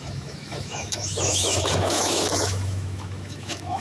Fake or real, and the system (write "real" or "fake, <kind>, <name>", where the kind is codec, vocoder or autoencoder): fake, autoencoder, DAC-VAE